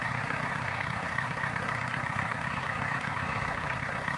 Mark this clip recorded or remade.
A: remade